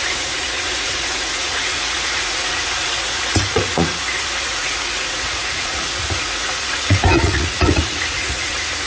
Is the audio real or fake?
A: fake